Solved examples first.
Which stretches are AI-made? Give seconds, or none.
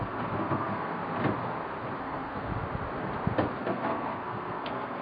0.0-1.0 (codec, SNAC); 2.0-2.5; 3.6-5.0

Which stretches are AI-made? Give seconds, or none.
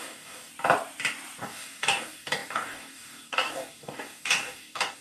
0.0-0.5 (codec, DAC); 1.4-5.0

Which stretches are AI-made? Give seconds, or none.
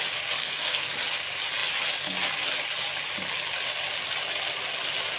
0.4-0.9 (codec, SNAC)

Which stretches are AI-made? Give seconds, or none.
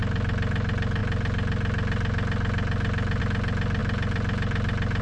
none